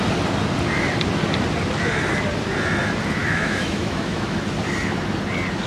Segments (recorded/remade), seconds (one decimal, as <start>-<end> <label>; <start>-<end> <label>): 0.0-3.2 recorded; 3.2-4.4 remade; 4.4-5.7 recorded